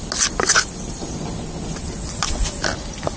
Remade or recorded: recorded